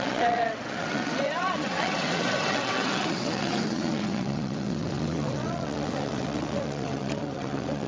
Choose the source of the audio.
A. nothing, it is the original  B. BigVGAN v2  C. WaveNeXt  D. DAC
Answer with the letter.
C